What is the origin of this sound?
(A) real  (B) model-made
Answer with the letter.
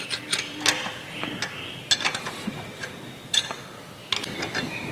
A